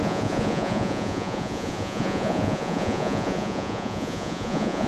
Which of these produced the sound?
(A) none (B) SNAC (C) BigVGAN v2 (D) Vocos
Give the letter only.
D